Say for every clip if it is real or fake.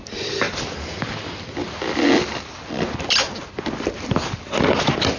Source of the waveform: real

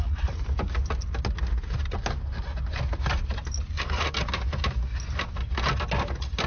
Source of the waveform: real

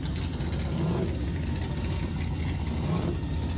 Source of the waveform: real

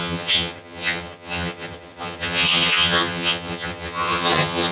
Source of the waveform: fake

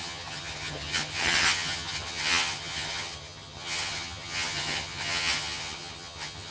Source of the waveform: fake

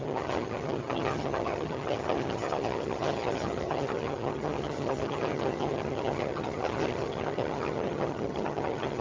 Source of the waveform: fake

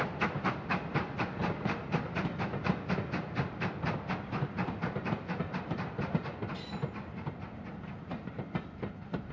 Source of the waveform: real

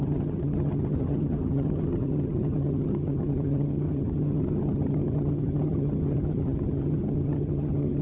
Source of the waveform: fake